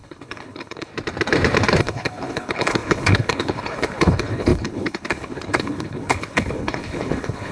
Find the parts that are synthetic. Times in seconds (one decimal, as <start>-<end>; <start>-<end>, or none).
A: 0.0-0.9; 1.8-7.5